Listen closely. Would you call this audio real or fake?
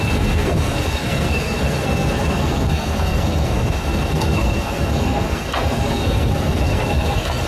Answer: fake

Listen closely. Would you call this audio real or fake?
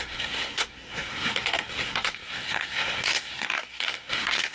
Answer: fake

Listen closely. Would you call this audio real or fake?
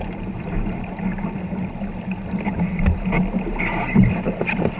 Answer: real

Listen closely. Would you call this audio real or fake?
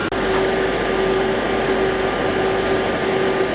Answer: real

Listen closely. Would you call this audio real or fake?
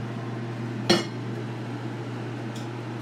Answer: real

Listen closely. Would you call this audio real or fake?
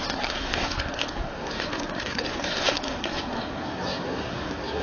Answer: fake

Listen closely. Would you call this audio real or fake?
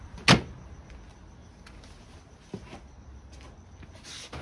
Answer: real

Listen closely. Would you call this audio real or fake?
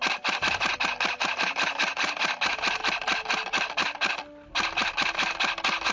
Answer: real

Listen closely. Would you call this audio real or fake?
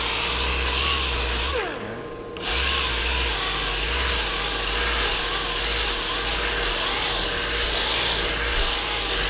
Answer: real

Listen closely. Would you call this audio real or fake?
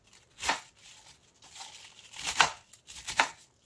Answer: real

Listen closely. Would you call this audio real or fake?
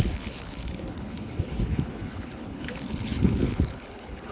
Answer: fake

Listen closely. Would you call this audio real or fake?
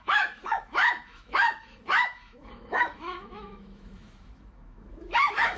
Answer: fake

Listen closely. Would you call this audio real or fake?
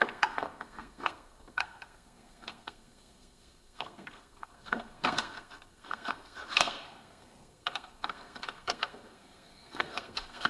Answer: fake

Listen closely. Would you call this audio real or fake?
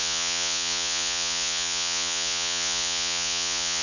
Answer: fake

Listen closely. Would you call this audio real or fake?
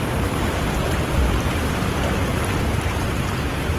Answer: real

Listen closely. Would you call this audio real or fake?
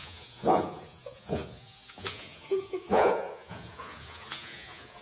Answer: fake